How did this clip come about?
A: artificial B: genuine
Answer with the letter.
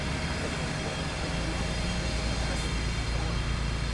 B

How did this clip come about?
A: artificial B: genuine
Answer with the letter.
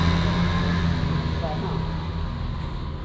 B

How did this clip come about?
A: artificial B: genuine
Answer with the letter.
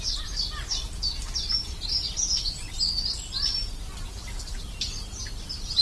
B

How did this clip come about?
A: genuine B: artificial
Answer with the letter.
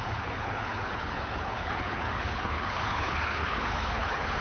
B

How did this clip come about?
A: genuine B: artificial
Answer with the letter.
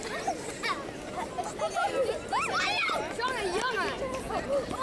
A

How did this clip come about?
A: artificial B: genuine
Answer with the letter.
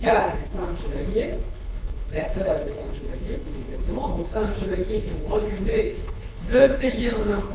A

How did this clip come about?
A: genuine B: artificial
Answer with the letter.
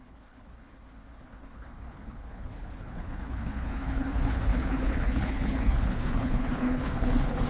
B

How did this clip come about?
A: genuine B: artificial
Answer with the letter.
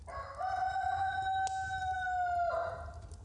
A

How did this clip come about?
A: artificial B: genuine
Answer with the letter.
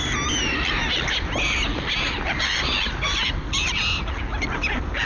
B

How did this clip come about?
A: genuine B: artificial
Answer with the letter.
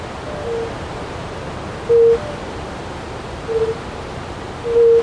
A